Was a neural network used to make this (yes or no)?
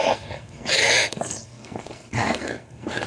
yes